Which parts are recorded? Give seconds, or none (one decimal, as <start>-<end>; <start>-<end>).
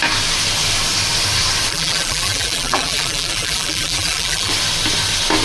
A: 0.0-1.7; 4.5-5.4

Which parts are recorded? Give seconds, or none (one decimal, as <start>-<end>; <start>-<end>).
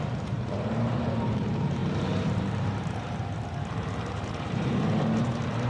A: none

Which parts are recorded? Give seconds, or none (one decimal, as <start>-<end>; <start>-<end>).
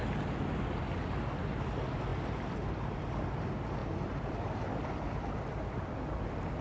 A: 0.0-3.8; 4.7-6.6